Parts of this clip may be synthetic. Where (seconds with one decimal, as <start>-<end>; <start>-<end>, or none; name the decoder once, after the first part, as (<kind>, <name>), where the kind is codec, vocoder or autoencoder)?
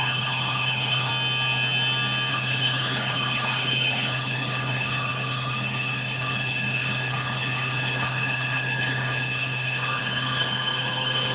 0.0-1.1 (codec, HILCodec); 2.3-11.3